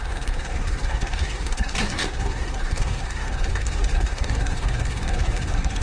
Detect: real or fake fake